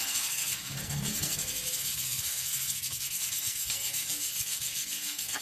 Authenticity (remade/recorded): remade